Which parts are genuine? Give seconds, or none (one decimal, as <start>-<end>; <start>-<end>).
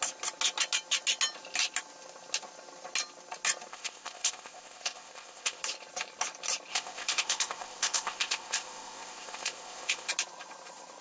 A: 0.0-3.7; 5.6-6.7; 10.1-11.0